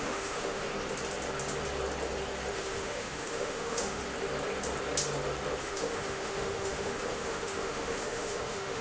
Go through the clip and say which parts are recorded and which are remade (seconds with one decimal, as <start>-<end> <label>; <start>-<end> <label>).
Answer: 0.0-0.7 remade; 0.7-2.5 recorded; 2.5-4.0 remade; 4.0-5.6 recorded; 5.6-8.8 remade